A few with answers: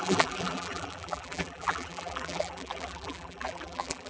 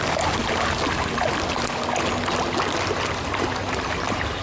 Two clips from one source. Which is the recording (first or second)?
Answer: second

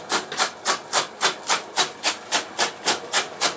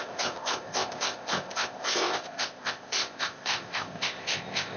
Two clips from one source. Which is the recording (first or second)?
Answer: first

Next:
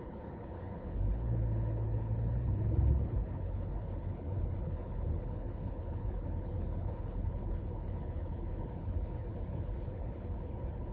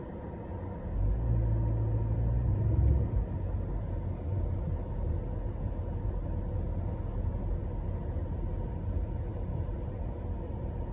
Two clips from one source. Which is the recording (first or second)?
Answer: second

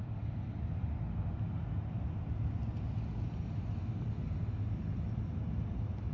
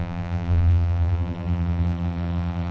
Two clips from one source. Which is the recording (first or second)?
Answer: first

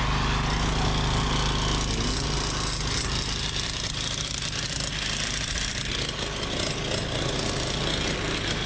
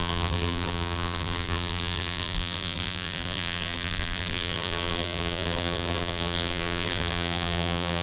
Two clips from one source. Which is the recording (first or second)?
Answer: first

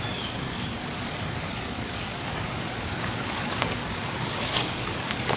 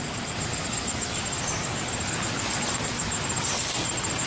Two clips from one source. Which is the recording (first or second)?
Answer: second